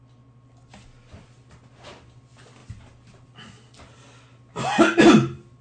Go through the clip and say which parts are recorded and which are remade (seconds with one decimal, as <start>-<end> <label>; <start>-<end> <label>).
0.0-5.6 recorded